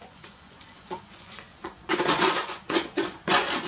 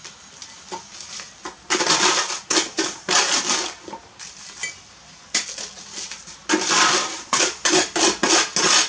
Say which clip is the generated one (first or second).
first